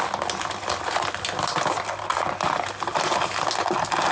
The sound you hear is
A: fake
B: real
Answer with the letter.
B